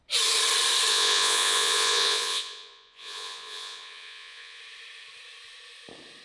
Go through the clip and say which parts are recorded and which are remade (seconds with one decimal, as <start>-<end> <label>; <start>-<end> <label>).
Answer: 0.0-0.9 recorded; 0.9-4.6 remade; 4.6-6.2 recorded